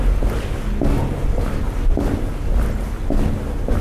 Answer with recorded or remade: recorded